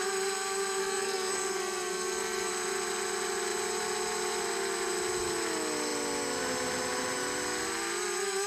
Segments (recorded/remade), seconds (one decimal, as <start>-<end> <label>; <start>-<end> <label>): 0.0-0.8 recorded; 0.8-2.5 remade; 2.5-8.5 recorded